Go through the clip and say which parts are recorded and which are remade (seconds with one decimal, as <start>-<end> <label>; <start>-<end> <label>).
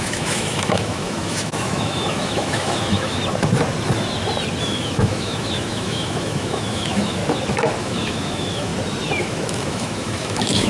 0.0-3.2 remade; 3.2-4.6 recorded; 4.6-7.2 remade; 7.2-7.8 recorded; 7.8-8.7 remade; 8.7-9.2 recorded; 9.2-10.7 remade